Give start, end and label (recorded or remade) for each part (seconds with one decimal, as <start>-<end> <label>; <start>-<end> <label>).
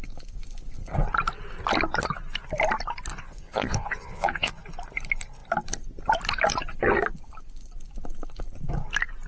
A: 0.0-3.1 recorded; 3.1-4.6 remade; 4.6-9.3 recorded